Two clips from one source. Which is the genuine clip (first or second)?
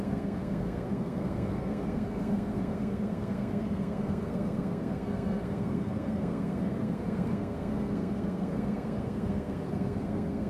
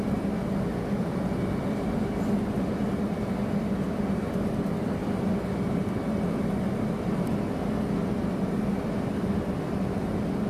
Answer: second